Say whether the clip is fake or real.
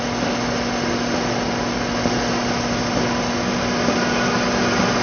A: fake